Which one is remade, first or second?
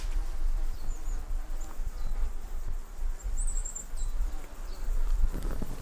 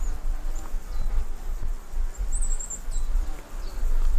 first